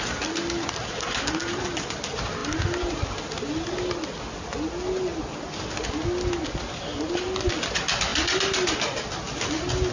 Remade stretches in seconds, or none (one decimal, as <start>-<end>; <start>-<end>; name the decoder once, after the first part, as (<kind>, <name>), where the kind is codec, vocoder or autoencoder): none